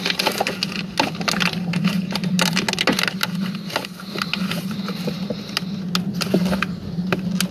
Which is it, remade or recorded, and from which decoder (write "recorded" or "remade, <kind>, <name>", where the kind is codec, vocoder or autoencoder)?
recorded